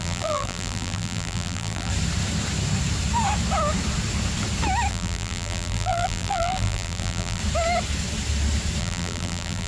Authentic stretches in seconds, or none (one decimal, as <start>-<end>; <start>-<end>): 1.9-4.9; 7.4-8.8